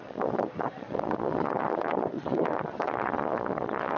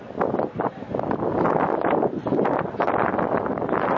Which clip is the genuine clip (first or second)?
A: second